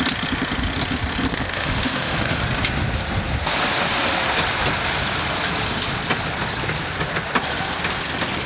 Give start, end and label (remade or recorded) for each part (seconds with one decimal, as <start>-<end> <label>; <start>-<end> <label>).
0.0-1.3 recorded; 1.3-2.4 remade; 2.4-8.5 recorded